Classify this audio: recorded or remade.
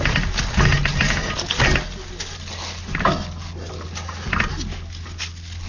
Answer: recorded